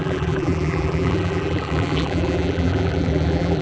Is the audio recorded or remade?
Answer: remade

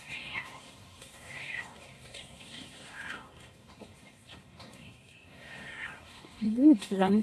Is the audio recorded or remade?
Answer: remade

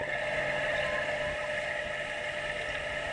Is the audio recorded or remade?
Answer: recorded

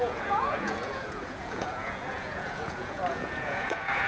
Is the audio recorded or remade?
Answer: remade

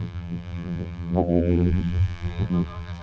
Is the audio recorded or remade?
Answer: remade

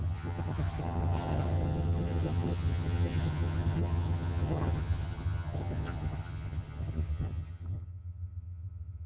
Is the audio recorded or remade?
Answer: remade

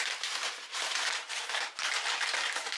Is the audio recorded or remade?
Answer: recorded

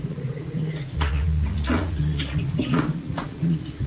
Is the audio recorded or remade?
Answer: remade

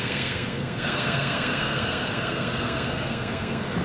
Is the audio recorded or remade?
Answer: remade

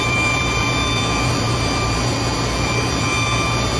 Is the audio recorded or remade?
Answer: remade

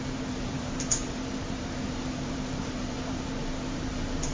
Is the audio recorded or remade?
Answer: remade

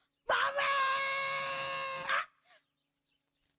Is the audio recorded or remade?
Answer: recorded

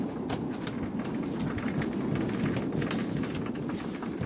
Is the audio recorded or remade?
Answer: recorded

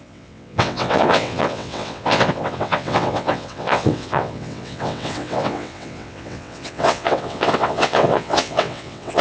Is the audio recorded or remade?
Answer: remade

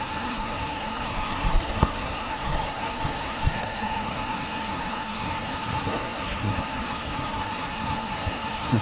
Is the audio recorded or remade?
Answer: remade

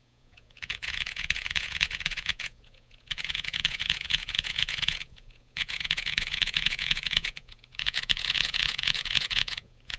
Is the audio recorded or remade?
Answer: remade